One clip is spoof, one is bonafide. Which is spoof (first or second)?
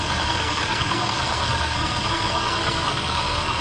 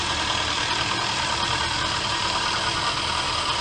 first